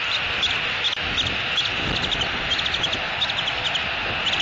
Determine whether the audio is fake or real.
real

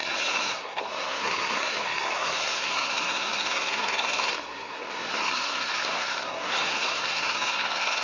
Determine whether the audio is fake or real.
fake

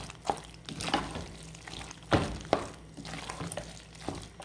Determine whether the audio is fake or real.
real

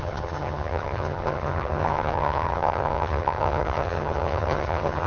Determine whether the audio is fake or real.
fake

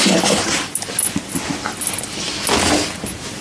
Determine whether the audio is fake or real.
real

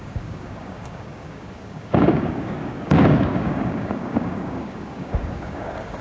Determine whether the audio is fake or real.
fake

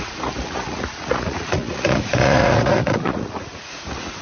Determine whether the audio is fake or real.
fake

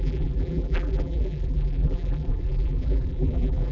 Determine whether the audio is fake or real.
fake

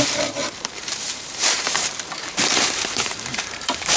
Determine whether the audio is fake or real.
fake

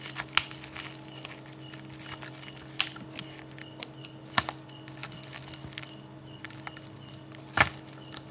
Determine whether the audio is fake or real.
real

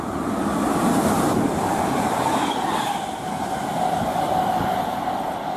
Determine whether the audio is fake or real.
real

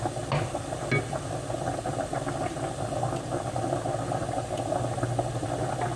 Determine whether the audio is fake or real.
real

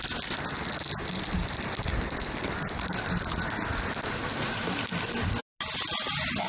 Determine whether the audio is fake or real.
real